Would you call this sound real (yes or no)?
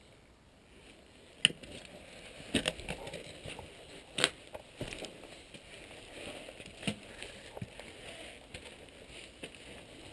yes